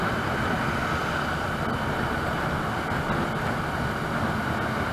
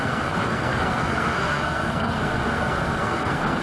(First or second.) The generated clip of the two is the second